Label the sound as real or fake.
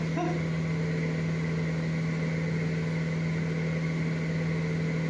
real